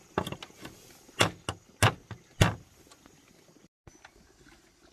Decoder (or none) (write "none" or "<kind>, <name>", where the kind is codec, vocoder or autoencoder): none